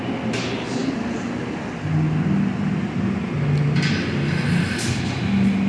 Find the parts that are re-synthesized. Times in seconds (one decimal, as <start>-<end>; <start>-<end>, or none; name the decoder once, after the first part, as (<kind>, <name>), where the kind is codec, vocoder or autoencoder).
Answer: none

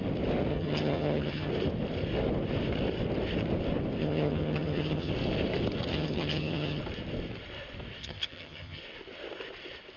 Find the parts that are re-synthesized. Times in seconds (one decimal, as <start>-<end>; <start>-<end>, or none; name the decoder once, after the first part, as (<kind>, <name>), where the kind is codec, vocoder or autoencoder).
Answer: 0.5-1.5 (vocoder, HiFi-GAN); 4.0-5.1; 5.9-6.8; 8.0-8.8

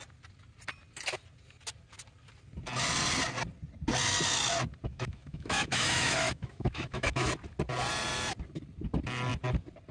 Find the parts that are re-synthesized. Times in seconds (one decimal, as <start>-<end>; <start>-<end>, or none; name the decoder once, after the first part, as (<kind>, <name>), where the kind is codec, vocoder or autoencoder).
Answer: 4.9-7.3 (autoencoder, DAC-VAE)

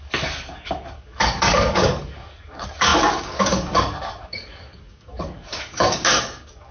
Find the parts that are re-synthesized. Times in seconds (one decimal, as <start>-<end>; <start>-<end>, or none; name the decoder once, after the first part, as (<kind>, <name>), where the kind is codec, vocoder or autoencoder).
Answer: 0.0-6.7 (codec, DAC)